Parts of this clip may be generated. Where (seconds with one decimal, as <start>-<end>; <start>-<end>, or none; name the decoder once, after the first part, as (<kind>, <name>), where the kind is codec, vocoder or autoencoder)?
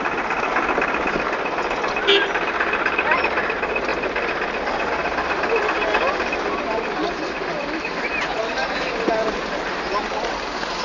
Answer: none